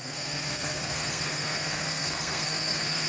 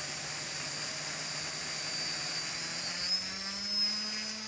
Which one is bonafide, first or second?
second